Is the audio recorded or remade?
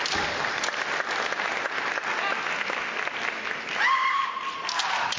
recorded